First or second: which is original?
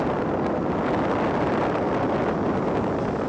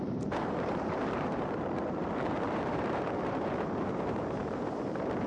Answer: first